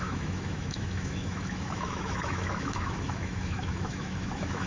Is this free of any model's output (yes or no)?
no